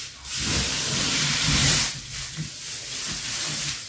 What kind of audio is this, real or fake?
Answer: real